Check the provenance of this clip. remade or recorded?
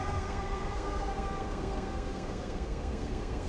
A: remade